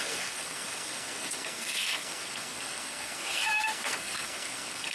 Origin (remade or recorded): remade